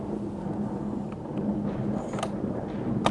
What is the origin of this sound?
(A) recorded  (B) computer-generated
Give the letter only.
A